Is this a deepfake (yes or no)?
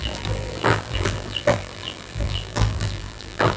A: yes